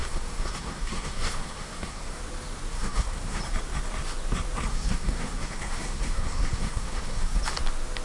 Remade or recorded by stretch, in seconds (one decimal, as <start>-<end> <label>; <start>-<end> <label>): 0.0-2.2 remade; 2.2-2.7 recorded; 2.7-3.4 remade; 3.4-4.7 recorded; 4.7-7.4 remade; 7.4-8.0 recorded